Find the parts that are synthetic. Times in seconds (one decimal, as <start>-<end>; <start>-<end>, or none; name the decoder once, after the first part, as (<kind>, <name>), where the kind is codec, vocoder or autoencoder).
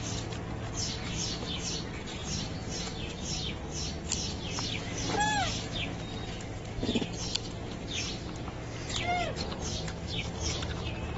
none